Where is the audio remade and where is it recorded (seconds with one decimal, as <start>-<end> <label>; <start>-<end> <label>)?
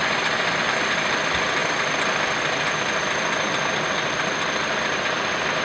0.0-5.6 recorded